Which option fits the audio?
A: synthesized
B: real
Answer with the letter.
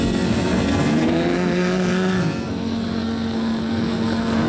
A